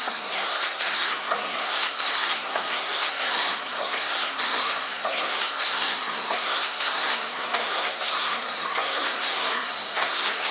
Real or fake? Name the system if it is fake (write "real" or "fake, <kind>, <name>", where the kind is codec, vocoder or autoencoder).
fake, codec, SNAC